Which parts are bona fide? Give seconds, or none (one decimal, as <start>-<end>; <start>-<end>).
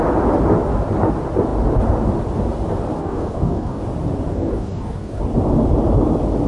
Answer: 0.0-3.0; 3.8-4.3; 5.2-6.5